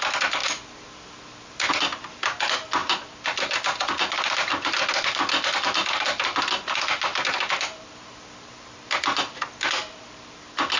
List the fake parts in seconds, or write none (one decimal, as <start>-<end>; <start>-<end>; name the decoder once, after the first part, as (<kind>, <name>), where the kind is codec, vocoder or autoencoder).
none